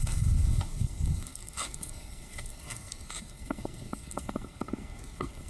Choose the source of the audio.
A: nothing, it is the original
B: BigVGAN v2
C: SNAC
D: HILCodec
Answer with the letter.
C